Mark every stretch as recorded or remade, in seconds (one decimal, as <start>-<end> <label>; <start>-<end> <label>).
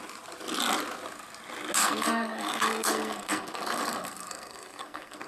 0.0-1.8 recorded; 1.8-5.3 remade